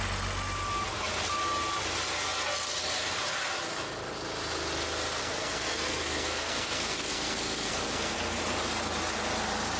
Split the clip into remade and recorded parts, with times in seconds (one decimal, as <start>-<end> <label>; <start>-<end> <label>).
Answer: 0.0-5.2 recorded; 5.2-8.4 remade; 8.4-9.8 recorded